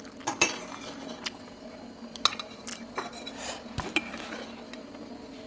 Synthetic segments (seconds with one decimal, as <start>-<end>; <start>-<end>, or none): none